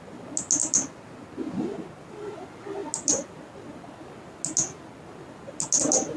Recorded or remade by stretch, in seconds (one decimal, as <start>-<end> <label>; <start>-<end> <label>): 0.0-6.2 recorded